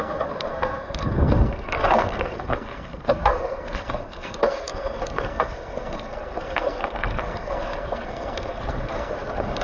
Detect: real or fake fake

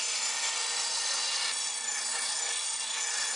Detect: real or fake real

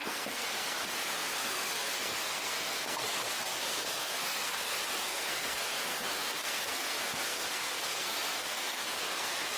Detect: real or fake fake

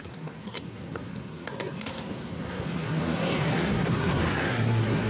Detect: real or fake fake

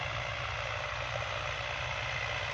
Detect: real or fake real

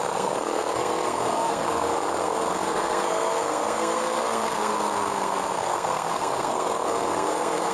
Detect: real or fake fake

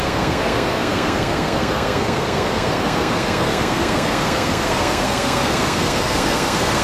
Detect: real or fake fake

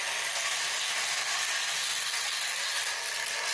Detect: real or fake real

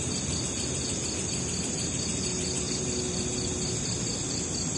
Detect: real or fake real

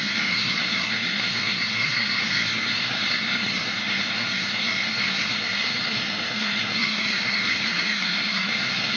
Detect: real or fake fake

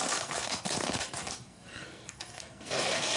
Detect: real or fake fake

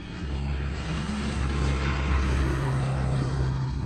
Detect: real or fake fake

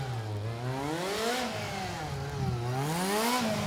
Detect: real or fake real